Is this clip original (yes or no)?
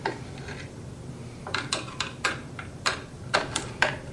no